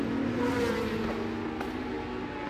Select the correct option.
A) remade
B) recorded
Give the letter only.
B